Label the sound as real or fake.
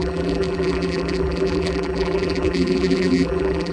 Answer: fake